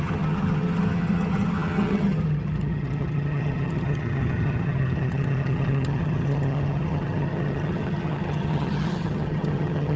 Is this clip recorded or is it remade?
remade